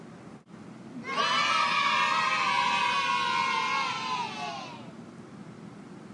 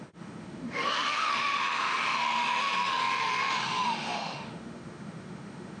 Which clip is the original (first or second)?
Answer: first